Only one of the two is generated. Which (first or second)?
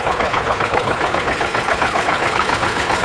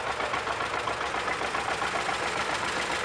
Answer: first